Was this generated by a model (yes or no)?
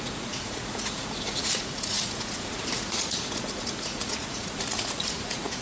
yes